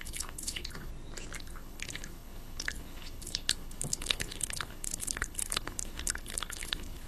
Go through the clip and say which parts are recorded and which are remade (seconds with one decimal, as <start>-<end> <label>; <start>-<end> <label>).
0.0-0.9 remade; 0.9-1.4 recorded; 1.4-7.1 remade